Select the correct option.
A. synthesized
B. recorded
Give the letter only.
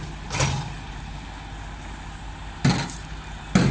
B